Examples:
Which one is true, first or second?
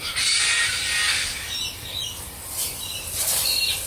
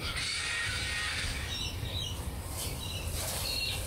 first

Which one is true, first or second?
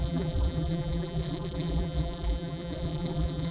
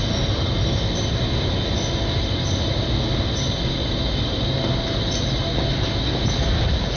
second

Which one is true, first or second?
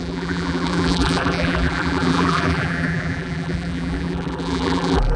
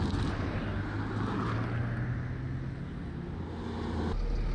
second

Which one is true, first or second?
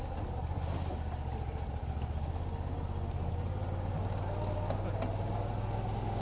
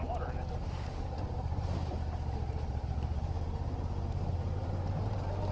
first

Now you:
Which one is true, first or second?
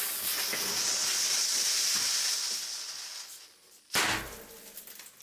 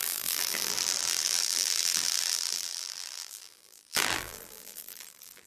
first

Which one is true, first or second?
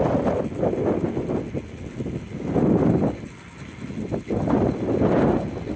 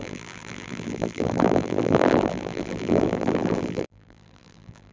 first